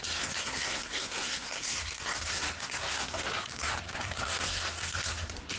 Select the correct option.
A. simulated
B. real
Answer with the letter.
A